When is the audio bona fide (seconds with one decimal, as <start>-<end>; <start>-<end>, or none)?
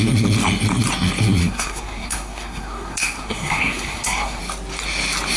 0.0-1.4; 4.4-5.4